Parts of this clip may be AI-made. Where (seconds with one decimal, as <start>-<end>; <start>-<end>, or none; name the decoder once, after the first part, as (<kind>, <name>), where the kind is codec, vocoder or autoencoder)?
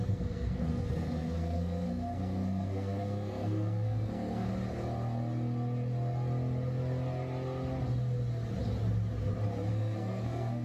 0.0-4.5 (codec, SNAC); 9.7-10.6